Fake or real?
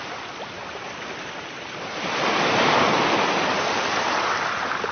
real